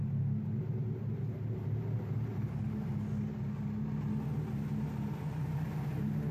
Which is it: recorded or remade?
recorded